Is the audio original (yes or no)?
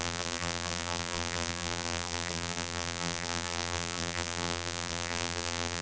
no